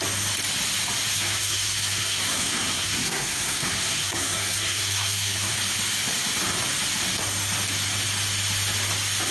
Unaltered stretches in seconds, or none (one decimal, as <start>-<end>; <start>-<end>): 0.0-1.1; 5.5-9.3